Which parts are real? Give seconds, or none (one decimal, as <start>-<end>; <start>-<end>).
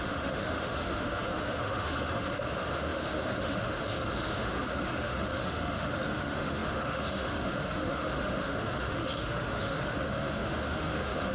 none